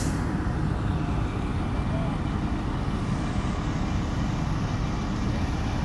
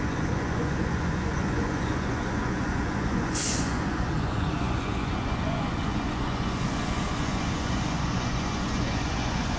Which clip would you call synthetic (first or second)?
second